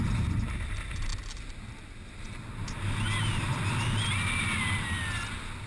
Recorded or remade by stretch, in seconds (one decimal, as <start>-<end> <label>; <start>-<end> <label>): 0.0-5.7 recorded